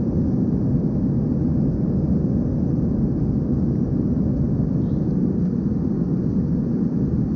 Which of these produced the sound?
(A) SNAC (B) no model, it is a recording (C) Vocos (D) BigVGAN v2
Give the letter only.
B